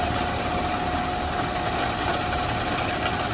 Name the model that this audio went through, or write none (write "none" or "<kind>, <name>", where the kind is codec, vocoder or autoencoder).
none